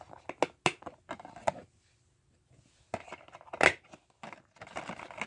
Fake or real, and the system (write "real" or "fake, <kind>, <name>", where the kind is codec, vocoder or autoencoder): real